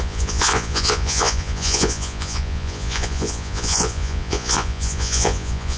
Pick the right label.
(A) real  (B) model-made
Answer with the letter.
B